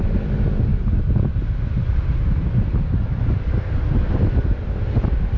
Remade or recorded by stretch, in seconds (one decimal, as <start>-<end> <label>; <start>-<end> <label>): 0.0-5.4 recorded